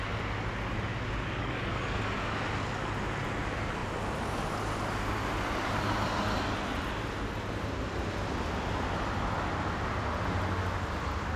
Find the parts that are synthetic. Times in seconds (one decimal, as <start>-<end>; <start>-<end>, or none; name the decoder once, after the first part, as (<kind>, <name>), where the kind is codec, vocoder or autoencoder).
1.4-2.0 (codec, DAC)